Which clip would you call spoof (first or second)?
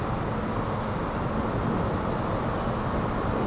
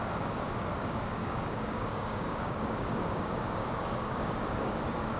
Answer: second